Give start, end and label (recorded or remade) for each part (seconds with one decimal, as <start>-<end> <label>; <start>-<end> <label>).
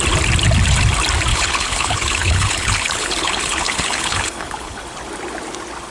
0.0-1.3 recorded; 1.3-4.8 remade; 4.8-5.9 recorded